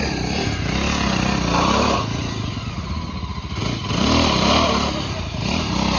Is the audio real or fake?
real